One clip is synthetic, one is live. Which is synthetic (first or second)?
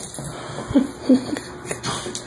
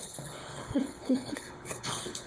second